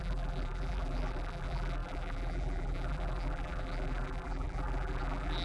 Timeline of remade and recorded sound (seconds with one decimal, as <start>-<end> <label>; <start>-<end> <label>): 0.0-5.4 remade